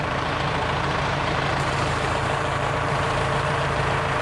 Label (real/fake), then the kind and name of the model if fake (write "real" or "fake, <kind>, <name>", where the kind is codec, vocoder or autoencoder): fake, vocoder, BigVGAN v2